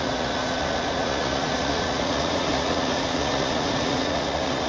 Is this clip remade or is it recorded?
remade